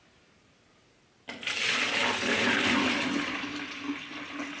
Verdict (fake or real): real